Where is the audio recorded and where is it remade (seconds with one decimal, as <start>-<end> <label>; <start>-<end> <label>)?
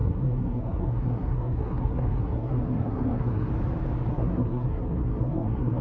0.0-3.5 remade; 3.5-4.1 recorded; 4.1-5.8 remade